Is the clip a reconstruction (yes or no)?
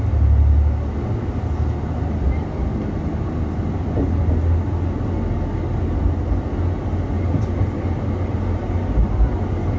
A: no